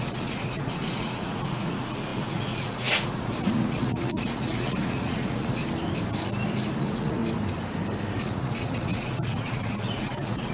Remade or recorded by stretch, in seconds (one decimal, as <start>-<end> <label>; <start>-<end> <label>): 0.0-5.6 remade; 5.6-6.8 recorded; 6.8-7.2 remade; 7.2-8.1 recorded; 8.1-10.5 remade